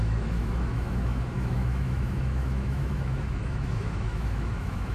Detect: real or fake fake